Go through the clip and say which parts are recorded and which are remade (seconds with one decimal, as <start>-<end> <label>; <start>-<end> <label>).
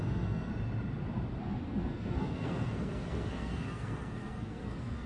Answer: 0.0-0.5 remade; 0.5-1.4 recorded; 1.4-5.1 remade